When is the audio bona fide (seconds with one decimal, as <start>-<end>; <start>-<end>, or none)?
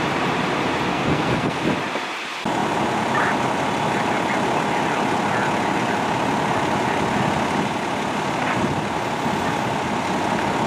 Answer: 0.0-0.9; 1.6-10.7